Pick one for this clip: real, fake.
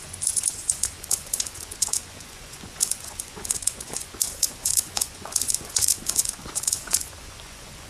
fake